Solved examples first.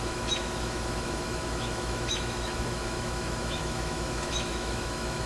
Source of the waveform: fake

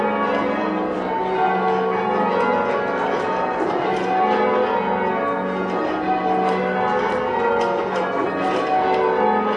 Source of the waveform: real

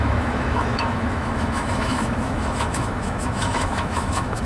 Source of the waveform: fake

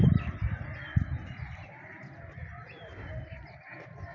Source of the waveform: real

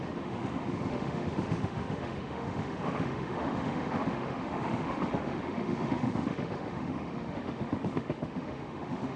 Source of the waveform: fake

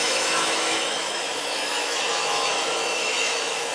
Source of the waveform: fake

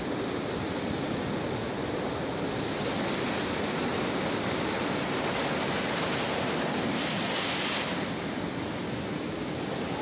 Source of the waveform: real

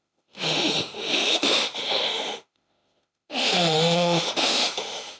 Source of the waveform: fake